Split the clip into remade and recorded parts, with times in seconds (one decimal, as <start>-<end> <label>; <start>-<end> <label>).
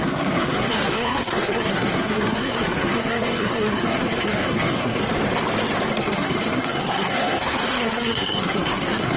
0.0-5.0 remade; 5.0-5.9 recorded; 5.9-9.2 remade